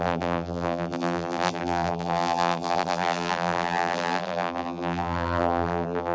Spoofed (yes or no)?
yes